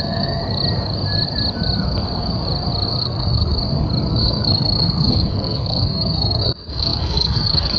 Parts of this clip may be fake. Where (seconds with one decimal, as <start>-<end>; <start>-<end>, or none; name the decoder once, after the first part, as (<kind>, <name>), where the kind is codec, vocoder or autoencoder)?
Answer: 0.0-0.4 (codec, SNAC); 3.0-3.6; 4.1-7.8